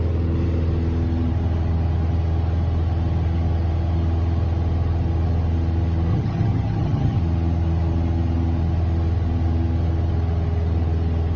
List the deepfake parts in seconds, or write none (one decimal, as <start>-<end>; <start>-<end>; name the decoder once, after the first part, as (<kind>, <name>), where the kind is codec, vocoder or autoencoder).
6.1-7.2 (vocoder, HiFi-GAN)